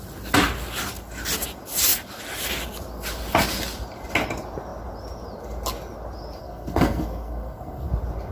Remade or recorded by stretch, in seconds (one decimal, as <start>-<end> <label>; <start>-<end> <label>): 0.0-6.4 recorded; 6.4-7.9 remade; 7.9-8.3 recorded